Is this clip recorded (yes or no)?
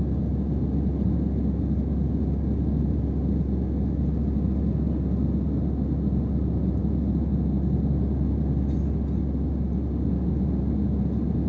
yes